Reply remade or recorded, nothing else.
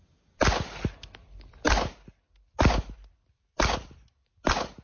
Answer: recorded